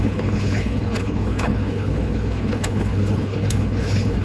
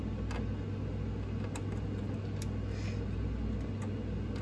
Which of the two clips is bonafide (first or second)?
second